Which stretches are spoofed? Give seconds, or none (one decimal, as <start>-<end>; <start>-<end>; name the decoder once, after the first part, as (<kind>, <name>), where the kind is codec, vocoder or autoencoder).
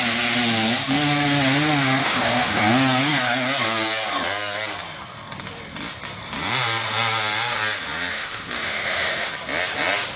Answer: 2.0-2.6 (autoencoder, DAC-VAE); 8.1-9.3